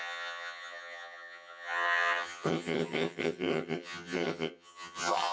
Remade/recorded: remade